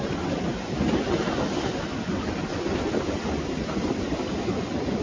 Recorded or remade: recorded